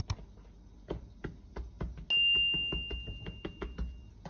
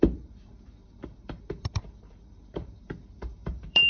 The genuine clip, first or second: first